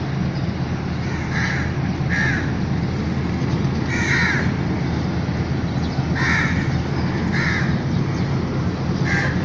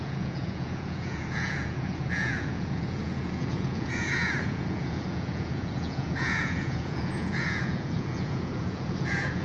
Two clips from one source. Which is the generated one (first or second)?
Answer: second